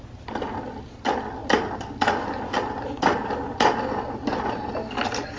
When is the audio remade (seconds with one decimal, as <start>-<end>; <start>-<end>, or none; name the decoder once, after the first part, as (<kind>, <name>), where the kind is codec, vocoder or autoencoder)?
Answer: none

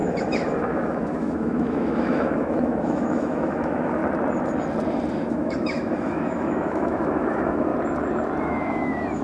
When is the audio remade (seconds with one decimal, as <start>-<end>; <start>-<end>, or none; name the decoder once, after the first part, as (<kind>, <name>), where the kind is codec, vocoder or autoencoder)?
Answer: 0.0-4.0 (autoencoder, DAC-VAE); 5.1-7.7; 8.4-9.2

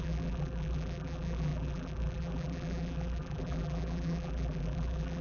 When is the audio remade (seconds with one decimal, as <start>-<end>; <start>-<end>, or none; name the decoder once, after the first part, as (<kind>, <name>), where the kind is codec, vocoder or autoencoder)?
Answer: 0.0-5.2 (vocoder, BigVGAN v2)

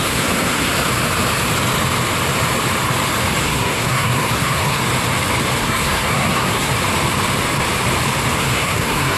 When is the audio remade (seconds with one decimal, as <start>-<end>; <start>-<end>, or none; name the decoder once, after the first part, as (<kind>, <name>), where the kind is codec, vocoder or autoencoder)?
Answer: 0.0-0.7 (codec, SNAC); 3.4-4.8; 5.6-6.7; 8.4-9.2

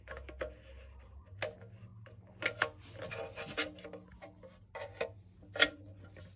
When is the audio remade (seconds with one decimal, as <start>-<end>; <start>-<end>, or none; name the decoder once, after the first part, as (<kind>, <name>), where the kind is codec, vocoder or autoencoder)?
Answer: none